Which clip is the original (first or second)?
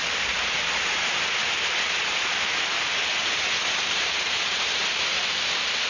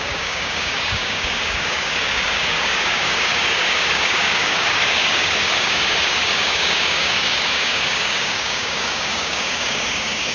first